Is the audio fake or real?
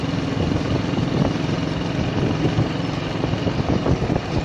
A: real